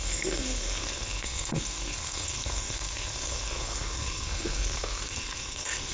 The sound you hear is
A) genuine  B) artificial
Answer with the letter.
B